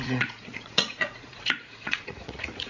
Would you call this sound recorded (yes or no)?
no